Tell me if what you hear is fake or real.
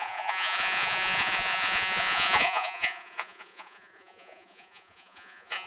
fake